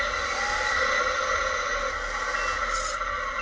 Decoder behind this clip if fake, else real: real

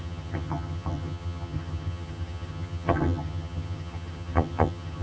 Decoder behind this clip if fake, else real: fake, vocoder, HiFi-GAN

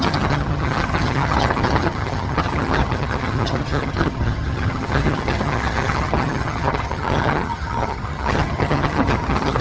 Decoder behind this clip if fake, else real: fake, vocoder, HiFi-GAN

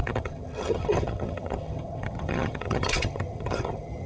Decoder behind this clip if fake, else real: fake, vocoder, HiFi-GAN